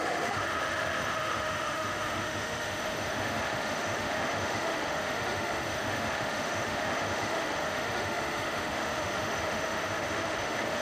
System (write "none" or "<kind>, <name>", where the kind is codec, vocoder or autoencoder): autoencoder, DAC-VAE